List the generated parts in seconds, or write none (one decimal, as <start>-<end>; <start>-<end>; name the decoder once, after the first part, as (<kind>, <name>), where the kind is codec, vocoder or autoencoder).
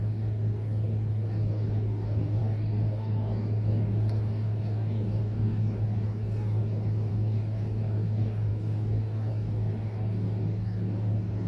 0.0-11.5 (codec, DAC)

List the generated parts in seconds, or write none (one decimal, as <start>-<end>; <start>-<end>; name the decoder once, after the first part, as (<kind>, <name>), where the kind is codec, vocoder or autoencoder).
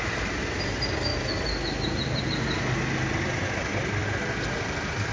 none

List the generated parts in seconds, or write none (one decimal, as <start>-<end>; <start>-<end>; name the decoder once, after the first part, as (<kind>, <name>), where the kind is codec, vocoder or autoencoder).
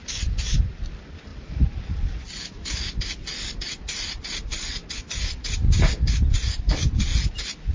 5.6-6.1 (codec, DAC)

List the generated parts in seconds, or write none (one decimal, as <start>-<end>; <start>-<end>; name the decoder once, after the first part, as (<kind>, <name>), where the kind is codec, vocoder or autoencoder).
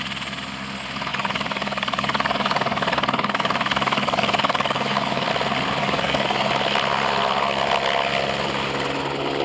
1.1-5.3 (codec, DAC); 5.8-6.5